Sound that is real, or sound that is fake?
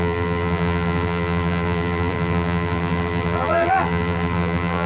fake